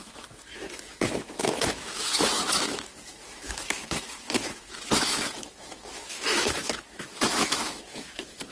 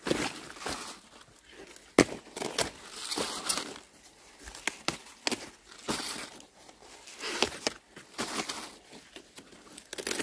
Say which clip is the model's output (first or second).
first